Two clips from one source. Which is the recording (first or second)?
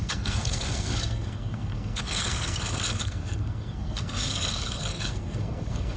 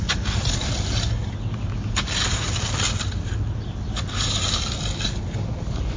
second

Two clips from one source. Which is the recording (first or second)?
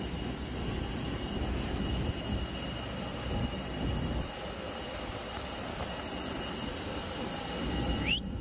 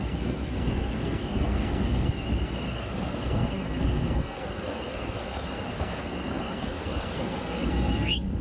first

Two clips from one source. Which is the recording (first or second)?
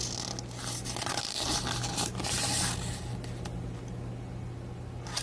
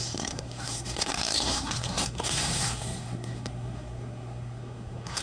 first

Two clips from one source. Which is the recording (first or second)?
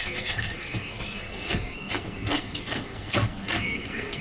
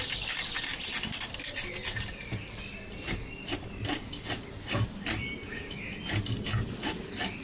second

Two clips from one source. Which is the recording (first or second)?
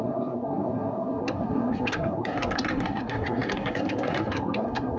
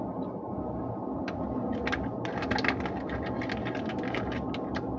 second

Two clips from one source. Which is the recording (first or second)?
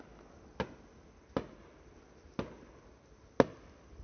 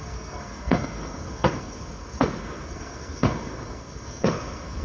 first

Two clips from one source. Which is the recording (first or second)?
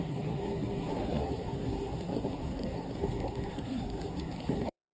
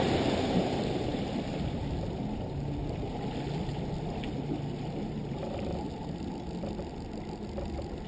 second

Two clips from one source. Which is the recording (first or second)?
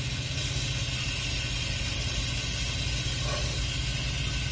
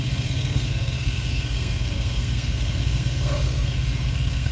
first